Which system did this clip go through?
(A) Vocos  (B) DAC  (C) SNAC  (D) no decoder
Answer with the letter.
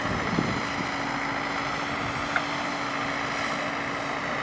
D